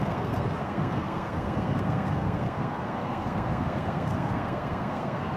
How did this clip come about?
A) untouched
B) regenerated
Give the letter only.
B